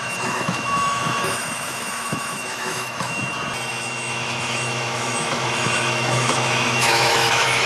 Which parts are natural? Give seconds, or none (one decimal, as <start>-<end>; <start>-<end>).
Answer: 3.2-3.7